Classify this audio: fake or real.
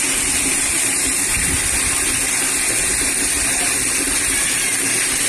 real